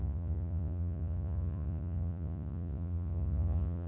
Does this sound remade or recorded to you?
remade